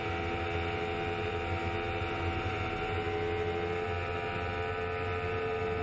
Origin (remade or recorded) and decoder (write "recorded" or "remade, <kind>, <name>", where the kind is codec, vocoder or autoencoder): recorded